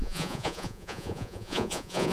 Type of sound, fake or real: fake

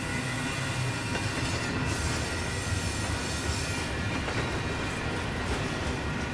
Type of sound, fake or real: real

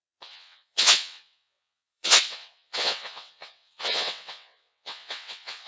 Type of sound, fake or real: fake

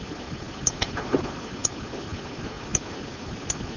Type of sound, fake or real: real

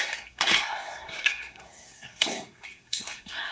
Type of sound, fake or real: fake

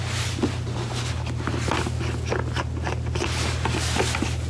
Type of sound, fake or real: real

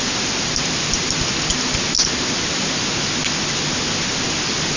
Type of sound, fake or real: real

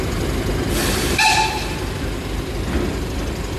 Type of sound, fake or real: real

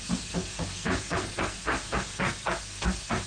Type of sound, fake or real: fake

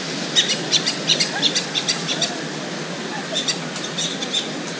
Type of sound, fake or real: real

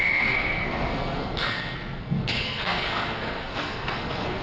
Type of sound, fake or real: fake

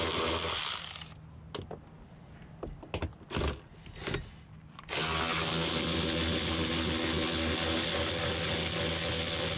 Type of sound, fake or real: real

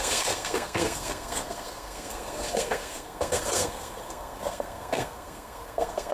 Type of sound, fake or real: fake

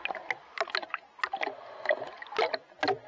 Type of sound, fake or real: real